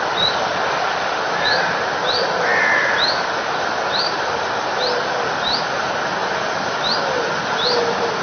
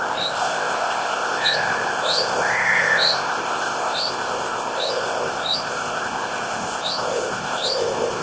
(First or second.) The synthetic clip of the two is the second